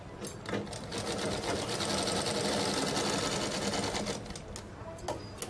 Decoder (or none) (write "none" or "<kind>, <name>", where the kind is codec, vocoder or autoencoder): none